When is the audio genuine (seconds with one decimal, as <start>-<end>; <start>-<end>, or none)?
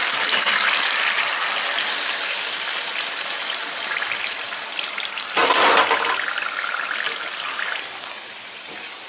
5.4-8.3